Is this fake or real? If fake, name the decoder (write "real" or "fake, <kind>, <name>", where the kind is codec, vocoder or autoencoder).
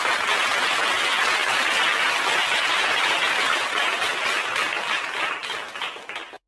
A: real